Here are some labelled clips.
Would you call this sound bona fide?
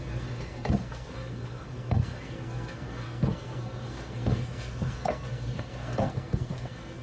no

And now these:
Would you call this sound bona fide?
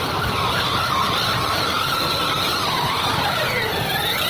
yes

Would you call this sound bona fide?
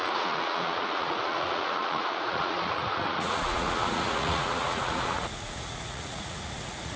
no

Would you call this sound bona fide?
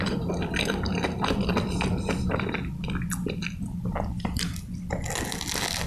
yes